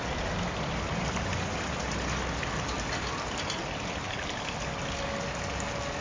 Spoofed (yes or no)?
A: no